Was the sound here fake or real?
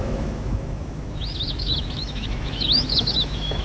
fake